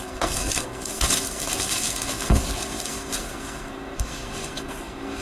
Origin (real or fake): fake